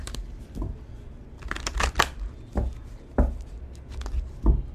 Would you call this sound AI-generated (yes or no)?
no